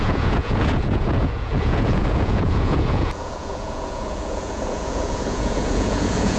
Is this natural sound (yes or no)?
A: no